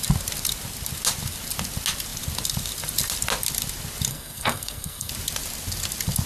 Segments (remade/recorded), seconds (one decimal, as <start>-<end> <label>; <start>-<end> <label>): 0.0-4.1 recorded; 4.1-5.1 remade; 5.1-6.3 recorded